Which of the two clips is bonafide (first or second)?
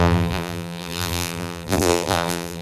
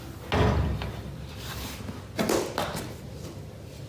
second